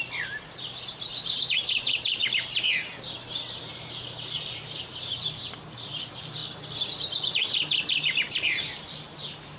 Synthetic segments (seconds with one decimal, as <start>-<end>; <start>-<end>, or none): 1.1-2.2; 3.6-6.4; 8.3-9.6